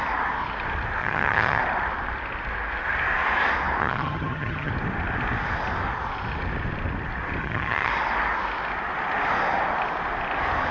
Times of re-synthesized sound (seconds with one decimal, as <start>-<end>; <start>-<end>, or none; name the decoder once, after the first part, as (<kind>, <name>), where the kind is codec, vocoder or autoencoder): 1.0-1.6 (vocoder, HiFi-GAN); 3.8-4.7; 7.4-7.9